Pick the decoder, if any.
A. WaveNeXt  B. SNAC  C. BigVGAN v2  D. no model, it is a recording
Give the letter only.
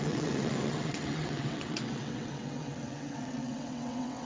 A